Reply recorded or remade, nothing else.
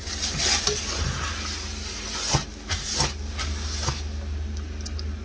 recorded